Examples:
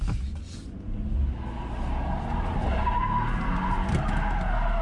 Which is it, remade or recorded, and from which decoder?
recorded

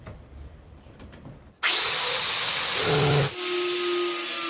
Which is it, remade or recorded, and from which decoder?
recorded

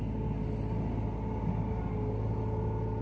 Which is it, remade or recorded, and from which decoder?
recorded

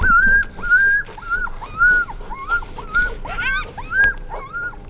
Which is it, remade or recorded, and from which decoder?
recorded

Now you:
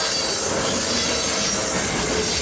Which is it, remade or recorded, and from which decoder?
recorded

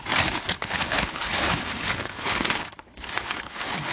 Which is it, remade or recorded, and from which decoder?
remade, codec, HILCodec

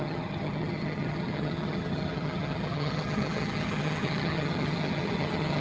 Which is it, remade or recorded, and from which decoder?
remade, vocoder, HiFi-GAN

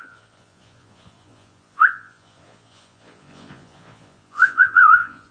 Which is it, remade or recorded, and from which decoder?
remade, vocoder, Vocos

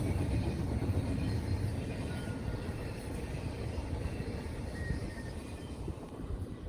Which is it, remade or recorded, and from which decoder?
remade, vocoder, BigVGAN v2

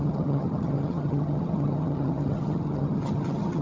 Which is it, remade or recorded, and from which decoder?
remade, vocoder, HiFi-GAN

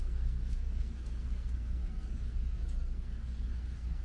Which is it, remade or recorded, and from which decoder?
remade, codec, SNAC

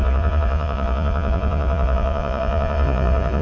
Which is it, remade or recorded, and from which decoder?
remade, vocoder, Vocos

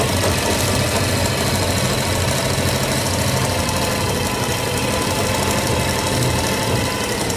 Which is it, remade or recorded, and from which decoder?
recorded